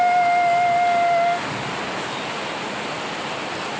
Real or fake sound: real